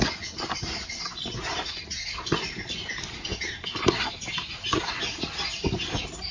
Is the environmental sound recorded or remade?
recorded